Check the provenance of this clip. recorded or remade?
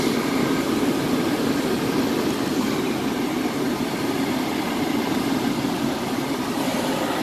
remade